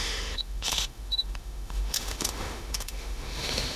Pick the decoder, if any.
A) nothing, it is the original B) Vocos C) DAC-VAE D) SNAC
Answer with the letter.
C